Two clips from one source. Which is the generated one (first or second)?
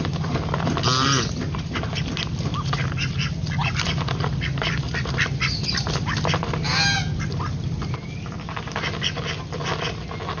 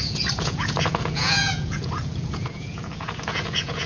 second